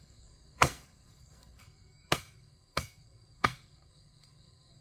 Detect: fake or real fake